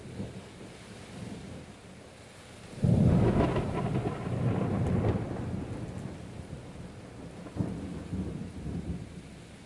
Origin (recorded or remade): recorded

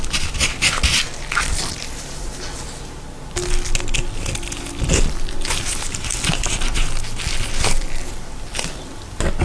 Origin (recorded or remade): recorded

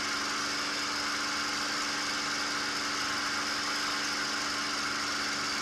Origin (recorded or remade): recorded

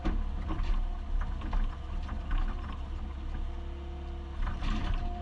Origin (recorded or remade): recorded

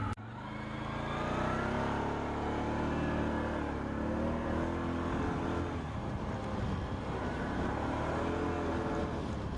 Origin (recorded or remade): recorded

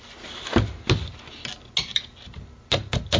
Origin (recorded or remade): recorded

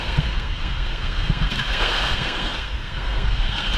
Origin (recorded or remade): remade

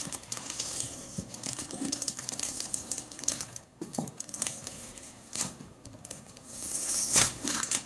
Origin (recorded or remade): remade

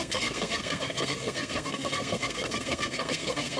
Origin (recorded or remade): remade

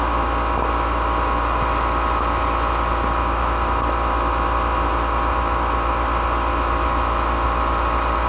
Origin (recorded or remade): recorded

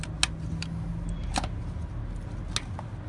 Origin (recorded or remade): recorded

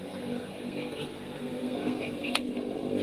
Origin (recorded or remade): remade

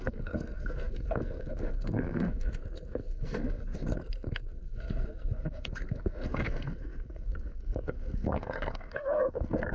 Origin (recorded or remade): remade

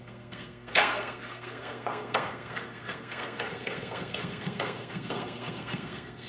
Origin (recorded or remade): remade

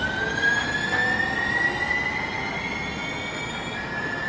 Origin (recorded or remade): recorded